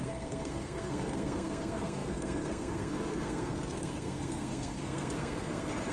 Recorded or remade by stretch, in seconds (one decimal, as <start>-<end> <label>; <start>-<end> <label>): 0.0-5.9 remade